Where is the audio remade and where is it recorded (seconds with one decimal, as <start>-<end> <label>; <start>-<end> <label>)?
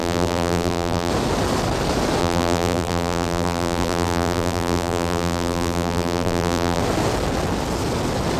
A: 0.0-1.1 remade; 1.1-2.2 recorded; 2.2-6.8 remade; 6.8-8.4 recorded